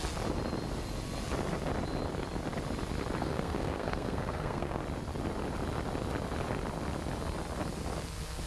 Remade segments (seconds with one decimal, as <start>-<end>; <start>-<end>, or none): 3.2-4.8